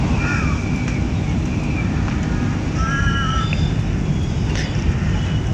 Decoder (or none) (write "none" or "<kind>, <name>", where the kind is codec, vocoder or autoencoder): none